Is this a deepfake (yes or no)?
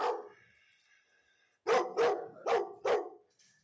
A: no